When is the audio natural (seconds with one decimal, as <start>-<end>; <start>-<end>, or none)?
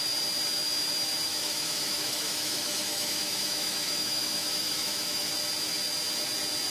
0.0-1.3; 5.3-6.7